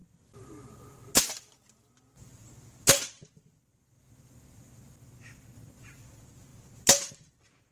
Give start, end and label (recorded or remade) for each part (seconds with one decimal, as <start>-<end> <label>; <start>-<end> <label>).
0.0-7.7 recorded